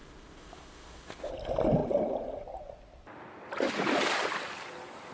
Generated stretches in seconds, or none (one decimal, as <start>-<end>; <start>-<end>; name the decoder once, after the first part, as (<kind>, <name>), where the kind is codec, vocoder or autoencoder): 0.0-1.3 (codec, ZipCodec)